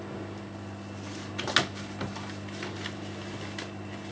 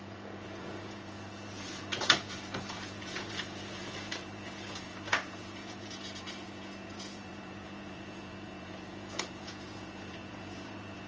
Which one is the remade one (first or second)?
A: second